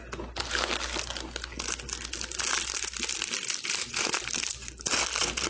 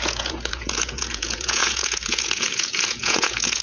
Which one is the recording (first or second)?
first